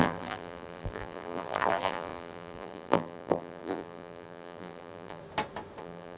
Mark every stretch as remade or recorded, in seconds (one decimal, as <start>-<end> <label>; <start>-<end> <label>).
0.0-5.2 remade; 5.2-5.8 recorded; 5.8-6.2 remade